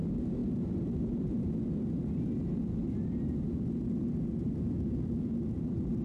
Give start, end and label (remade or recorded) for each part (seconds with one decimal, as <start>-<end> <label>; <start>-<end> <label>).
0.0-6.0 recorded